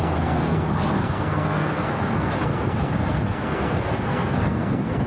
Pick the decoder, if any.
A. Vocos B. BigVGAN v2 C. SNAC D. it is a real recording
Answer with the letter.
C